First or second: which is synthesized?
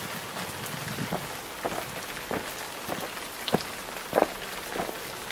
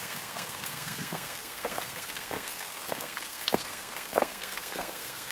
second